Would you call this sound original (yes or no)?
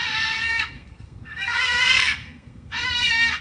no